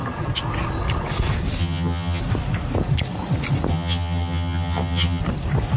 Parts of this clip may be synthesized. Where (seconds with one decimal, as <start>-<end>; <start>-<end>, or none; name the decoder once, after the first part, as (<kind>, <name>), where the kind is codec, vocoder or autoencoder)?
1.6-2.2 (vocoder, HiFi-GAN); 3.7-5.2